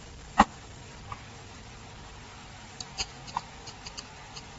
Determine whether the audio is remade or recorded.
recorded